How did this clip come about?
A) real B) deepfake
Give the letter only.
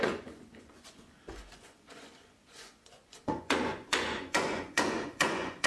B